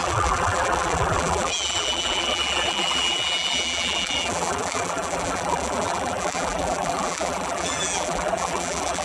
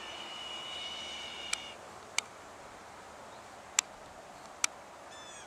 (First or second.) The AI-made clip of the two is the first